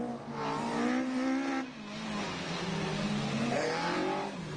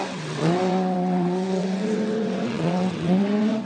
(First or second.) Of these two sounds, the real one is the first